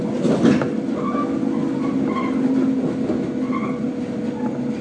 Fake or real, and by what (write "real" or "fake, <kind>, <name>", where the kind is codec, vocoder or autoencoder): real